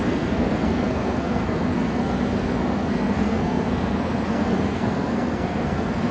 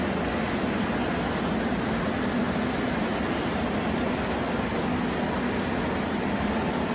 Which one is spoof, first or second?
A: first